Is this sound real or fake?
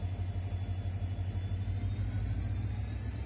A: real